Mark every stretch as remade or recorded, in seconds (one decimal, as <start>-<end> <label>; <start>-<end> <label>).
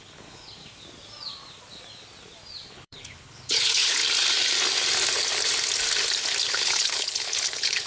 0.0-0.6 remade; 0.6-2.7 recorded; 2.7-4.0 remade; 4.0-6.5 recorded; 6.5-7.9 remade